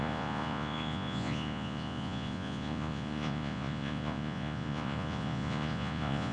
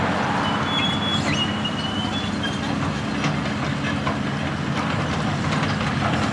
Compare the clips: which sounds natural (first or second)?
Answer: second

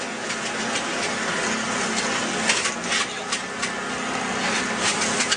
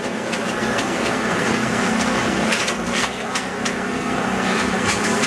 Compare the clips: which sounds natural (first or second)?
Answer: first